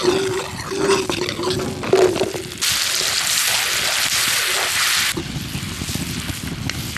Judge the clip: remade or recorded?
recorded